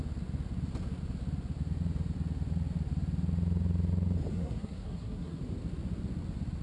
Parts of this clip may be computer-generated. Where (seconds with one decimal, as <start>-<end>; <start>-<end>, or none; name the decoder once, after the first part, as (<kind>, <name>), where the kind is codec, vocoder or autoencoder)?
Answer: 4.3-5.4 (codec, SNAC)